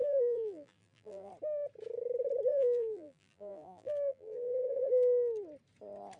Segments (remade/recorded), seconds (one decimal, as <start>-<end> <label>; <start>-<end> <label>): 0.0-1.3 remade; 1.3-2.5 recorded; 2.5-4.9 remade; 4.9-6.2 recorded